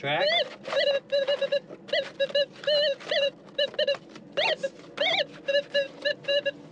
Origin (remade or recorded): recorded